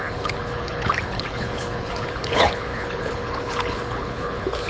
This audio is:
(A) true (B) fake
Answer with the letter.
B